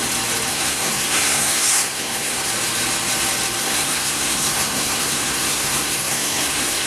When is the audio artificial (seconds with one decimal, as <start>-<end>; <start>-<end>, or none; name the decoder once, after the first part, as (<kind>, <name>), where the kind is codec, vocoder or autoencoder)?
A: 0.5-2.5 (codec, SNAC); 3.6-6.9